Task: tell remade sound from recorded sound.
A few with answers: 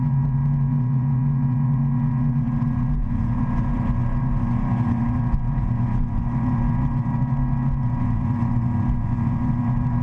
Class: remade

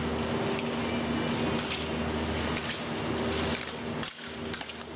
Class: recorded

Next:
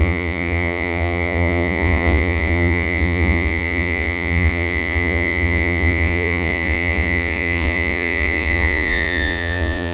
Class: remade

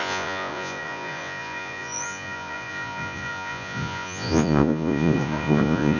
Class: remade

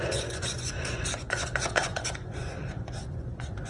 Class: remade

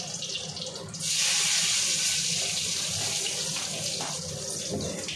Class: recorded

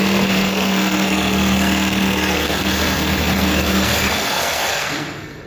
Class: remade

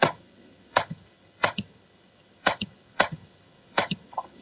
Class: remade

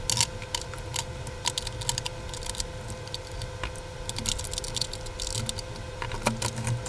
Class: recorded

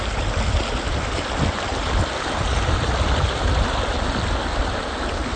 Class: recorded